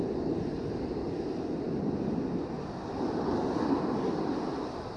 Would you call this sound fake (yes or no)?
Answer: no